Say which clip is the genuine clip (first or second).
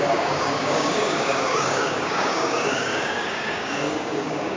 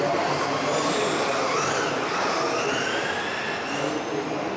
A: second